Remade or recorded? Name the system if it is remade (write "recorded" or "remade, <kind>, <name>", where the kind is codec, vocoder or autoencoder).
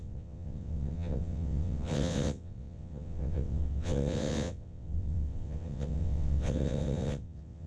remade, vocoder, WaveNeXt